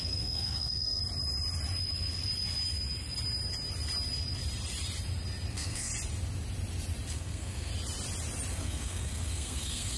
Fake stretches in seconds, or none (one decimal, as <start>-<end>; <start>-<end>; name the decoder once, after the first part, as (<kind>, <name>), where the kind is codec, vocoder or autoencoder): 0.0-1.0 (codec, SNAC); 5.5-5.9; 7.1-7.7; 8.5-10.0